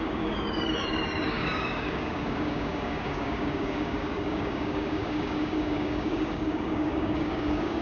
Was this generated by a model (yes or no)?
yes